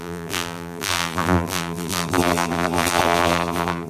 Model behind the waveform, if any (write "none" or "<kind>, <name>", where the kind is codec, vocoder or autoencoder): vocoder, BigVGAN v2